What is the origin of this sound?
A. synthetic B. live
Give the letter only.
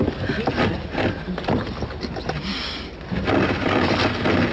B